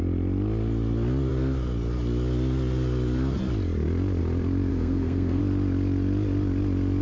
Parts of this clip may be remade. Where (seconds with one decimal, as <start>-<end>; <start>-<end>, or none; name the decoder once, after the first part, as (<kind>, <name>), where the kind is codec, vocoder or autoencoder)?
4.7-5.4 (codec, SNAC)